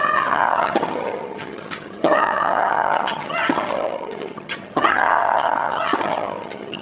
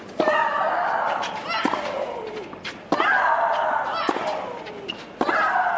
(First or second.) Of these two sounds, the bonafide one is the second